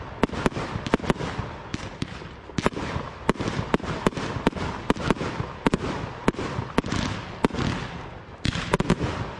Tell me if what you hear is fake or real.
real